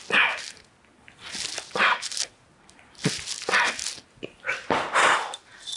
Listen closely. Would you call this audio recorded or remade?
recorded